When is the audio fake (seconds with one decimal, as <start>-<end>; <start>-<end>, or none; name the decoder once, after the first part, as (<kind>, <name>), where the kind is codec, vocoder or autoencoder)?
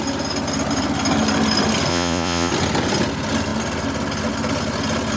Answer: 1.9-2.5 (vocoder, Vocos)